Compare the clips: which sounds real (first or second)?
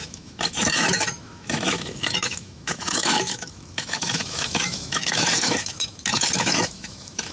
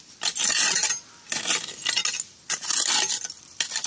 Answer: second